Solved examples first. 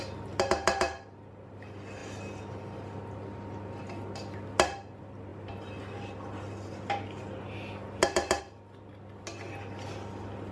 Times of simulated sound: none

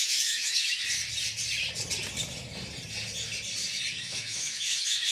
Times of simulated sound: 0.0-0.8 (autoencoder, DAC-VAE); 3.9-5.1

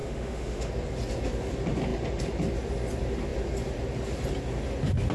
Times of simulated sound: 0.0-0.7 (autoencoder, DAC-VAE)

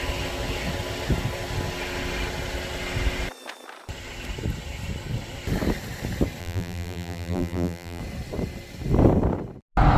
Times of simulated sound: 6.4-8.0 (vocoder, BigVGAN v2)

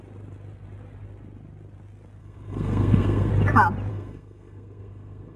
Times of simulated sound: 2.2-3.3 (codec, SNAC); 3.9-5.4